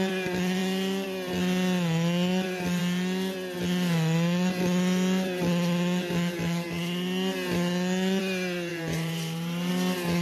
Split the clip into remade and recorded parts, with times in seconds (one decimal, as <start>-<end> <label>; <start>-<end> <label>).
0.0-8.7 recorded; 8.7-9.7 remade; 9.7-10.2 recorded